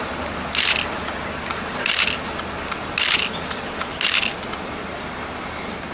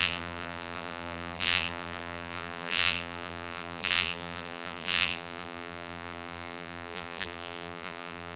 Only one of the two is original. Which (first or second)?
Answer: first